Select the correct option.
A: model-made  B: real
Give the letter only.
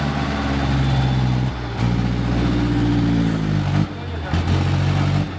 B